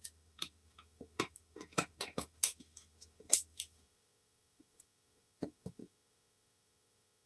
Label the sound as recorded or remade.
remade